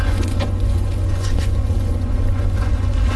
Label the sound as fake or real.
fake